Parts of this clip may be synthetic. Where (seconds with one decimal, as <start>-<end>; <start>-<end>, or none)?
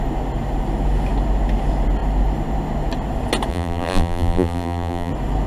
3.5-5.1